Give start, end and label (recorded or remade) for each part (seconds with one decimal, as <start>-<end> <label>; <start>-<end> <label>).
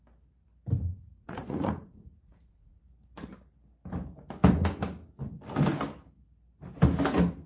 0.0-0.9 recorded; 0.9-2.8 remade; 2.8-7.5 recorded